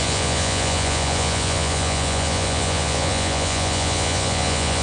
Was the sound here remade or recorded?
remade